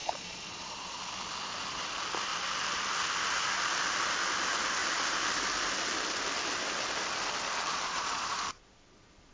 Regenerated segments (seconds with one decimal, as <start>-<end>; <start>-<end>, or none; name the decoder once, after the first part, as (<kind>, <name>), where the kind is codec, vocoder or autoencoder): 0.0-1.0 (vocoder, Vocos); 7.7-8.4